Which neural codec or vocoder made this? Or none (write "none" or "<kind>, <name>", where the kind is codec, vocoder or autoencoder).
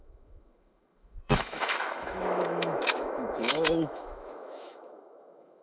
autoencoder, DAC-VAE